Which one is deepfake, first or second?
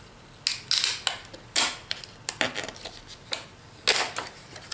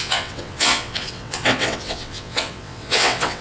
second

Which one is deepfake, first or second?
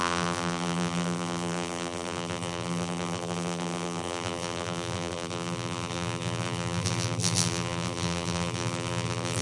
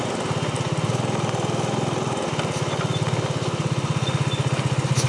first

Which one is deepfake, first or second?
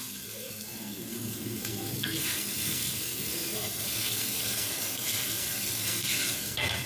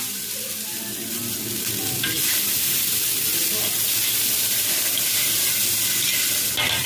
first